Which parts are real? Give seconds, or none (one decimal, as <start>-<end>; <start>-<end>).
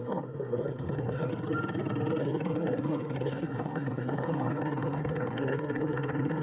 1.3-2.2